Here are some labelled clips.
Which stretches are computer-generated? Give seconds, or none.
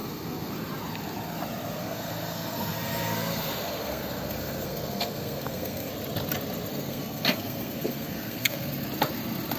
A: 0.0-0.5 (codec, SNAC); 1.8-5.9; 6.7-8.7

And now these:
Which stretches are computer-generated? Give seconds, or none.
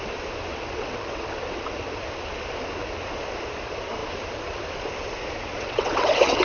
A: 0.5-2.0 (vocoder, WaveNeXt); 5.5-6.4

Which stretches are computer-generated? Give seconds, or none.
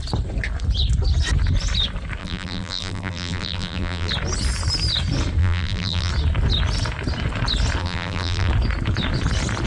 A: 2.2-4.1 (vocoder, BigVGAN v2); 5.4-6.1; 7.8-8.5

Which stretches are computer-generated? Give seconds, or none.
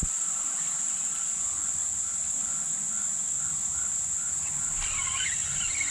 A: 5.0-5.9 (vocoder, BigVGAN v2)